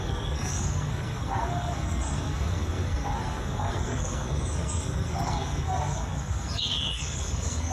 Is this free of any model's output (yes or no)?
no